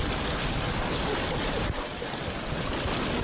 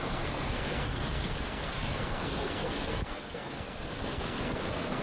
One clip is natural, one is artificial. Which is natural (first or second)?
first